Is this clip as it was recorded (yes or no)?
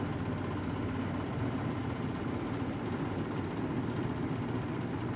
yes